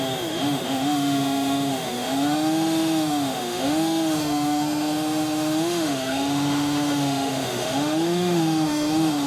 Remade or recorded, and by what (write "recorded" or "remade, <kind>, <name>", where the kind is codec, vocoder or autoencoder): remade, autoencoder, DAC-VAE